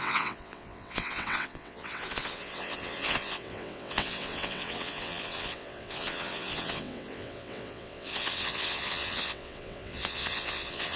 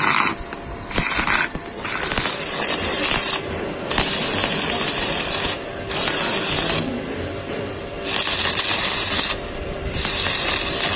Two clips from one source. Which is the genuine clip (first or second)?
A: second